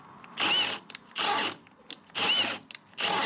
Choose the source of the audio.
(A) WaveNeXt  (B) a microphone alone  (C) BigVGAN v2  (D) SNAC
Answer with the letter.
B